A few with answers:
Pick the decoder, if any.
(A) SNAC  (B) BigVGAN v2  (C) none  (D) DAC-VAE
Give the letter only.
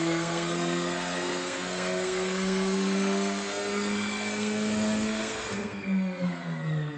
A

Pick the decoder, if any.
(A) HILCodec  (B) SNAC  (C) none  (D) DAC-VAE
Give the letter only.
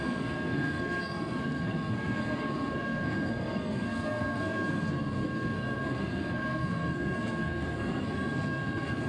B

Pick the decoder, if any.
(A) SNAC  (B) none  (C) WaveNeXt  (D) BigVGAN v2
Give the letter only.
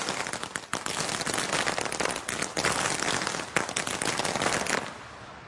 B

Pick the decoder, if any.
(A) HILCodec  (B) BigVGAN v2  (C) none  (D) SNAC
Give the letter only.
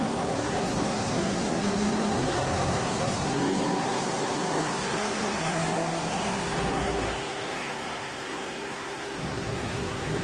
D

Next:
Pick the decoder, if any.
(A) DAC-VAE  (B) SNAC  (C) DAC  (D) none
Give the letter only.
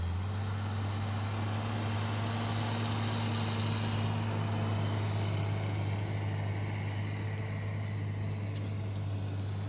D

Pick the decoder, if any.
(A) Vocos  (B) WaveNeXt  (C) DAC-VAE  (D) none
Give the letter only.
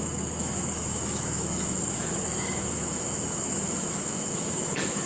C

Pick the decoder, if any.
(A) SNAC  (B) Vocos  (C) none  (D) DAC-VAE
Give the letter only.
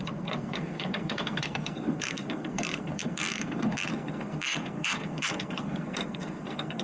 A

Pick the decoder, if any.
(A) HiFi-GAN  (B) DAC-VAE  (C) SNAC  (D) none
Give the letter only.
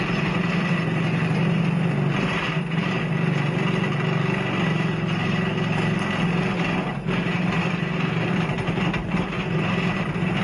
D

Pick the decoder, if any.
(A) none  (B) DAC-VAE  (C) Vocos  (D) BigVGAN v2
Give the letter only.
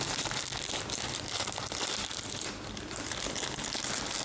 A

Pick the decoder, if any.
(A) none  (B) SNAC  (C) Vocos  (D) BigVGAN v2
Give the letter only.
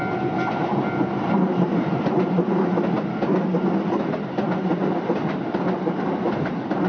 A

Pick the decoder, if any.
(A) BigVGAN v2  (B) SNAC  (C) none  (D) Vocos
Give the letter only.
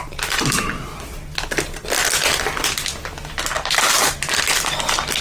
C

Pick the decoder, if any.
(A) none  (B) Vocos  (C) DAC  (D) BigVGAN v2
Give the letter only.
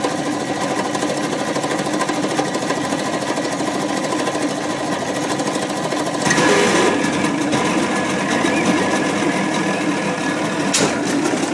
A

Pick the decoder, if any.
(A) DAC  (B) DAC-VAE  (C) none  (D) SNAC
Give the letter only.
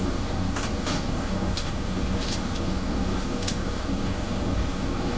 A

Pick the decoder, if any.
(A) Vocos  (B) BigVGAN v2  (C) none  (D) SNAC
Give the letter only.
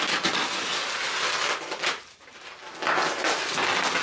C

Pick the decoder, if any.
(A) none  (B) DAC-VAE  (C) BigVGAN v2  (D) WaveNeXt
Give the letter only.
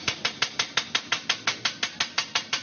A